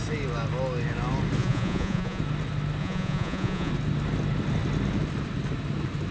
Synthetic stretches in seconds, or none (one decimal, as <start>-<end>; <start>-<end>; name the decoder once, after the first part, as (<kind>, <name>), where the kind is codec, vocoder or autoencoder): 1.4-2.2 (vocoder, Vocos); 2.8-3.7